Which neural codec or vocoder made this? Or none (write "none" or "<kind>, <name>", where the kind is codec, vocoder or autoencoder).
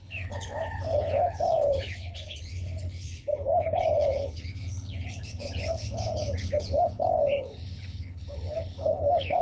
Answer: codec, HILCodec